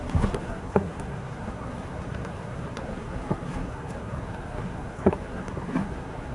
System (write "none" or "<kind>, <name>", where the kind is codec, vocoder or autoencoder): codec, SNAC